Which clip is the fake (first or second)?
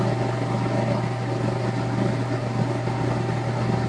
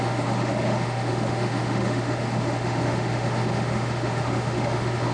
second